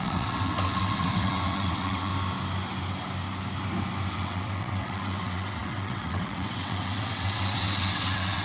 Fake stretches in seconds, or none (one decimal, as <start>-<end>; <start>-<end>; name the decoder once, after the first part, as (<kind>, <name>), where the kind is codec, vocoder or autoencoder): 0.0-2.1 (vocoder, WaveNeXt); 4.1-8.4